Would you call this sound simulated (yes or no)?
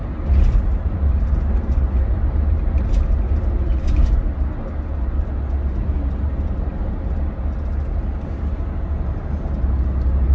no